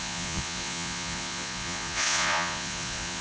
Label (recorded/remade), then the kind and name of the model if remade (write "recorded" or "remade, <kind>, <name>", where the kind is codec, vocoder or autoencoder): remade, vocoder, Vocos